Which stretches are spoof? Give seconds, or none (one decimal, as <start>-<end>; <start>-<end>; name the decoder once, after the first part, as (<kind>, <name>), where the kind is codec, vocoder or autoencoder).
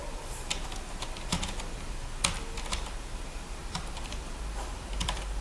3.6-5.4 (vocoder, BigVGAN v2)